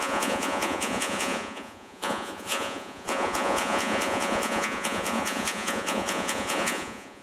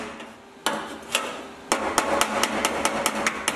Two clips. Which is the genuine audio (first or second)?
second